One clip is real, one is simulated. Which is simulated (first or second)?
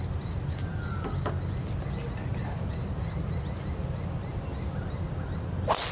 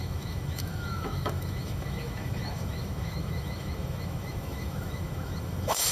second